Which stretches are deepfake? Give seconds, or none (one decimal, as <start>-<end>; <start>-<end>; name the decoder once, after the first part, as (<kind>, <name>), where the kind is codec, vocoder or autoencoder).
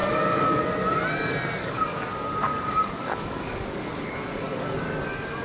0.0-0.6 (codec, DAC); 1.6-4.8